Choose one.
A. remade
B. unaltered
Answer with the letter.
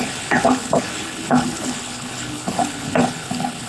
A